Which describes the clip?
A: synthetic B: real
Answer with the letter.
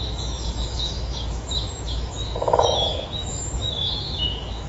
A